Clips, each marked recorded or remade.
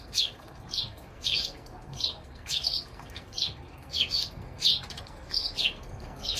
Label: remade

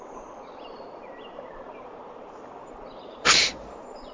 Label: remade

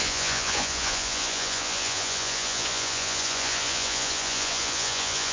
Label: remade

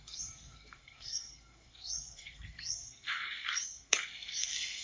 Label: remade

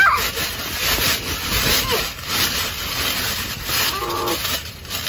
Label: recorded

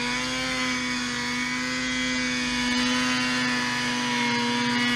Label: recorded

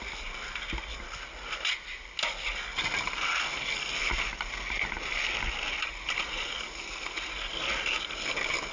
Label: recorded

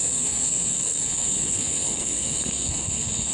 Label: remade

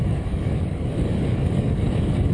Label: remade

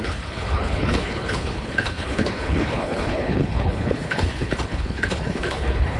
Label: remade